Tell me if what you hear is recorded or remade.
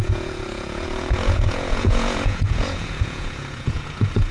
remade